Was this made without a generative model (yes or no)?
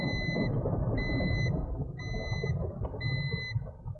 yes